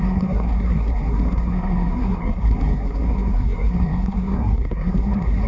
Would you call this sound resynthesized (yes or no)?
yes